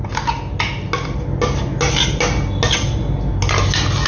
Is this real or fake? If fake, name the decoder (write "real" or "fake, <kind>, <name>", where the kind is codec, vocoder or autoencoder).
real